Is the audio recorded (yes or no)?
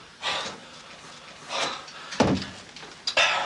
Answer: yes